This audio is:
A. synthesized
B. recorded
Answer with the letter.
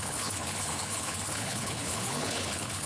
A